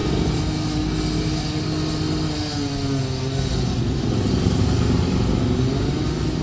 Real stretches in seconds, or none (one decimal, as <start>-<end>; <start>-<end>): 0.0-6.4